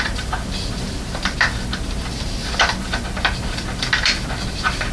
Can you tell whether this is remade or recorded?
recorded